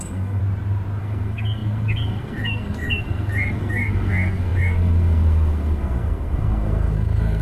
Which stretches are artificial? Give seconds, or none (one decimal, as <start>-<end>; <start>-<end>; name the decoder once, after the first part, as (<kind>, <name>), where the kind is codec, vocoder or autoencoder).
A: 0.0-0.4 (codec, SNAC); 1.0-7.4